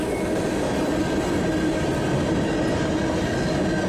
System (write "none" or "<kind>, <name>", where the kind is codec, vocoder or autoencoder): none